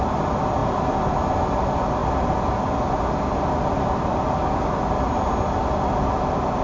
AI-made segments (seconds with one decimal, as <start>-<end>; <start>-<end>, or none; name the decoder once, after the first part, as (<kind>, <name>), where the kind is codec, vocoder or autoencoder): none